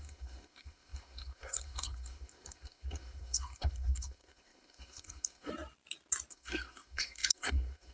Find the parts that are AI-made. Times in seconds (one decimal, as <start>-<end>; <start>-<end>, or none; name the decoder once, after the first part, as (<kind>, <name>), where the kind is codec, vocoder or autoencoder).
0.0-5.5 (codec, SNAC); 6.3-7.9